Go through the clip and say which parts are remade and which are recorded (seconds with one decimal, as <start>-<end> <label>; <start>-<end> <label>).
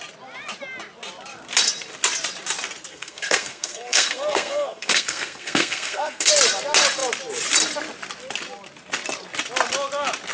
0.0-2.9 recorded; 2.9-6.3 remade; 6.3-10.3 recorded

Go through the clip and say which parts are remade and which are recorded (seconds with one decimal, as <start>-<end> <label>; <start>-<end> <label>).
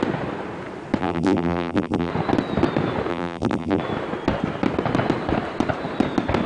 0.0-1.0 recorded; 1.0-2.1 remade; 2.1-3.1 recorded; 3.1-3.8 remade; 3.8-6.5 recorded